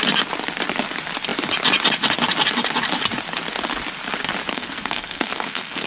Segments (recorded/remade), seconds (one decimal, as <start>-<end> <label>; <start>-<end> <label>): 0.0-4.5 recorded; 4.5-5.9 remade